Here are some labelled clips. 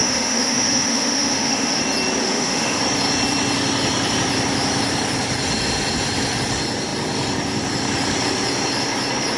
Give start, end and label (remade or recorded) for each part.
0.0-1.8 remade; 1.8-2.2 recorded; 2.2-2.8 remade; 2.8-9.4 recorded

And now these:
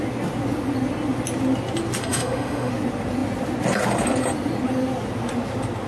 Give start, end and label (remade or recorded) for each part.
0.0-2.0 recorded; 2.0-2.7 remade; 2.7-5.9 recorded

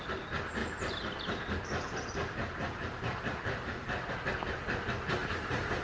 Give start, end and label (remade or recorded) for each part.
0.0-0.6 recorded; 0.6-4.1 remade; 4.1-5.2 recorded; 5.2-5.8 remade

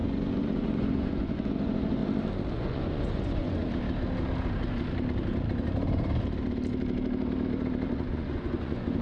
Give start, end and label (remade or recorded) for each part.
0.0-2.0 remade; 2.0-2.5 recorded; 2.5-3.6 remade; 3.6-7.9 recorded; 7.9-9.0 remade

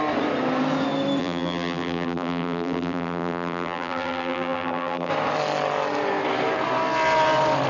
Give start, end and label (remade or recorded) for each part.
0.0-1.2 recorded; 1.2-5.1 remade; 5.1-7.7 recorded

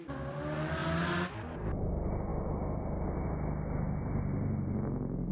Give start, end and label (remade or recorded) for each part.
0.0-5.3 recorded